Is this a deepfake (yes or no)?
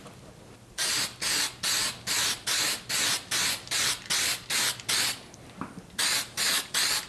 yes